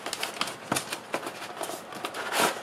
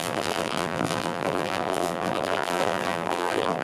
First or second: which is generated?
second